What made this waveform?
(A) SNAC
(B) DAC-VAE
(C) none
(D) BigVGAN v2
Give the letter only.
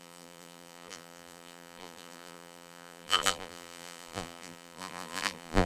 D